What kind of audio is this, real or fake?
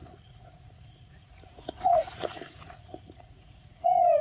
fake